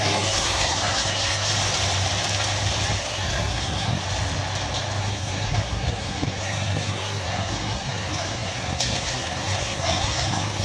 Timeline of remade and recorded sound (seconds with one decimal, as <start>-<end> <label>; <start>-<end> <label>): 0.0-1.5 remade; 1.5-3.0 recorded; 3.0-4.0 remade; 4.0-5.0 recorded; 5.0-10.6 remade